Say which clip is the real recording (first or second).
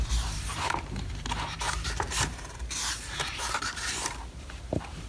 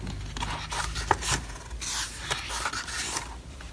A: second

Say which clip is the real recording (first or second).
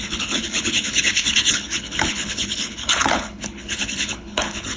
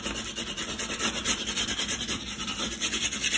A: second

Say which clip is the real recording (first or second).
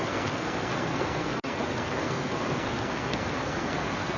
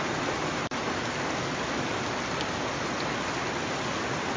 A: second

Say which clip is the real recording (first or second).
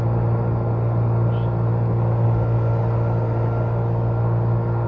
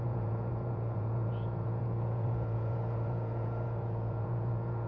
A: first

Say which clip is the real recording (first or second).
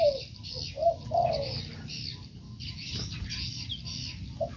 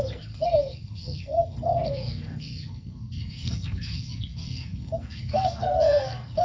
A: first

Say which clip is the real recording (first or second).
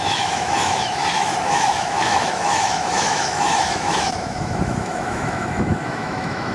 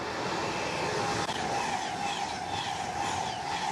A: second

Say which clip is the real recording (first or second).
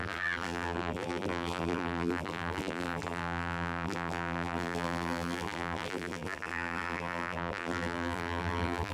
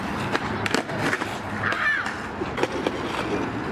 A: second